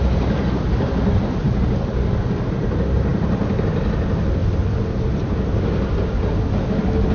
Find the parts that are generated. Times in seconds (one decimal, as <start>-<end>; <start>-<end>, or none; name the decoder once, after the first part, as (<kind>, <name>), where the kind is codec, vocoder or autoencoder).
none